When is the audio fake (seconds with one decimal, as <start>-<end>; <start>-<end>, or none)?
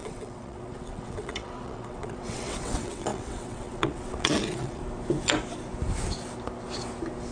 0.0-4.8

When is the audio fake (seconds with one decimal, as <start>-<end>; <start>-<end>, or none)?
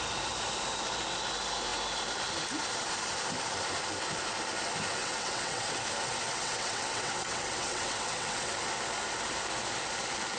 5.0-5.8; 6.3-8.5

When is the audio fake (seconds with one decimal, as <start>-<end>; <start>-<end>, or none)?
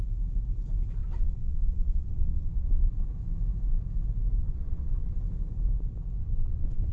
1.0-3.0; 4.4-5.2; 6.2-6.9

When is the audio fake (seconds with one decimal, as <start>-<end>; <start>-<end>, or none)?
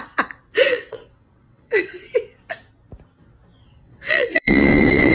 0.7-2.0; 3.6-5.1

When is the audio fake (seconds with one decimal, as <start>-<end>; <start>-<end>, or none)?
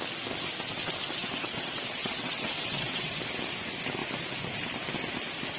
1.2-3.1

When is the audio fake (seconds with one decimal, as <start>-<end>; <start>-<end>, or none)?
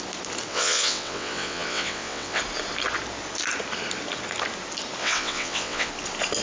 0.5-2.4; 5.0-5.9